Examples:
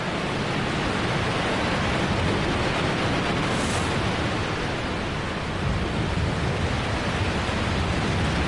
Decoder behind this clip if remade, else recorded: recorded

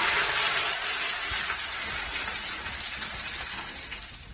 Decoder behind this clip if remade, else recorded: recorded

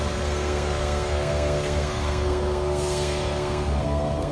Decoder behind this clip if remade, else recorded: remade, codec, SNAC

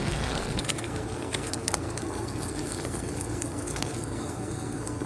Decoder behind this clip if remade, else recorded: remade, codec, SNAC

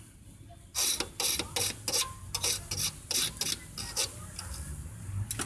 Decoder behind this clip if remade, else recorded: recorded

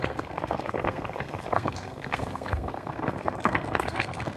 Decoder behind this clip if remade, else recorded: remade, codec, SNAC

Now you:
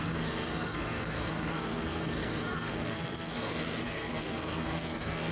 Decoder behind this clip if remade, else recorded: remade, codec, SNAC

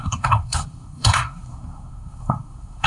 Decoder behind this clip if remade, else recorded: remade, codec, SNAC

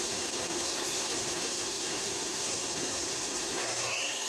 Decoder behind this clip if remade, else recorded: remade, codec, SNAC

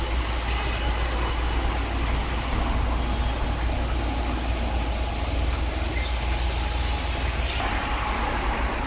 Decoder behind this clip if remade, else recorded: recorded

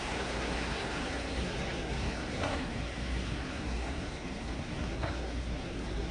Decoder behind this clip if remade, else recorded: remade, codec, SNAC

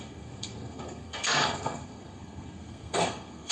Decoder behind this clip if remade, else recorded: remade, codec, SNAC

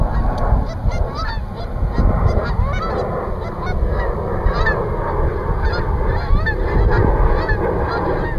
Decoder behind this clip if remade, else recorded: recorded